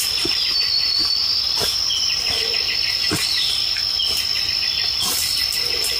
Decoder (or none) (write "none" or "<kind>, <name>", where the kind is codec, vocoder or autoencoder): none